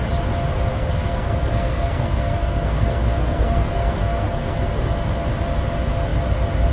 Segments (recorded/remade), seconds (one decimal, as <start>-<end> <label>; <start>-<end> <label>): 0.0-0.7 recorded; 0.7-4.7 remade; 4.7-6.7 recorded